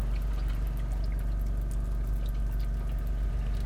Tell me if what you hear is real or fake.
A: real